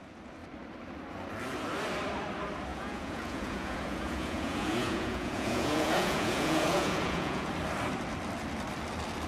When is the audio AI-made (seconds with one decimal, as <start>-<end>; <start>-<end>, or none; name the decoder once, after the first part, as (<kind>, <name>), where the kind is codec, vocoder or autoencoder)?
2.7-7.5 (vocoder, Vocos)